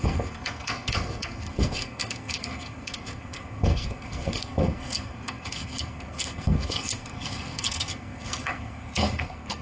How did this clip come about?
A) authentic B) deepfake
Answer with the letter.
B